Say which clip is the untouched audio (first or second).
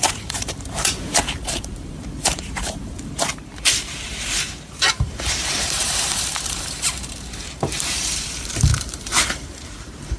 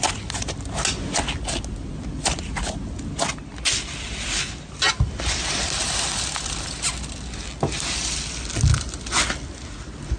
second